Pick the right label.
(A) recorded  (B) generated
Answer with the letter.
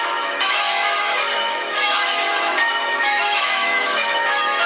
B